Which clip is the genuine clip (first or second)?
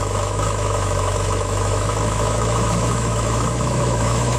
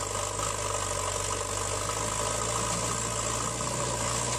second